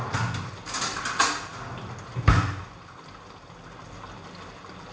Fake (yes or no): no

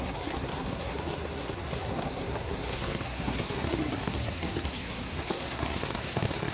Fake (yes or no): yes